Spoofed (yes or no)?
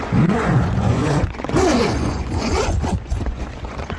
yes